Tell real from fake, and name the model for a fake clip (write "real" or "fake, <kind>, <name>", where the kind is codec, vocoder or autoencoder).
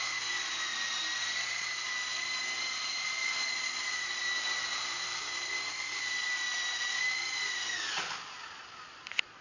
real